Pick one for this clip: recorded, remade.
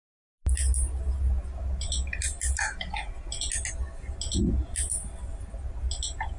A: recorded